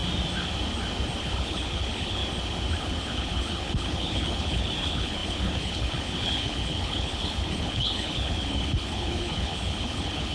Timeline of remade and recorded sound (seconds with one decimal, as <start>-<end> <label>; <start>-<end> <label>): 0.0-1.2 recorded; 1.2-2.2 remade; 2.2-2.8 recorded; 2.8-10.3 remade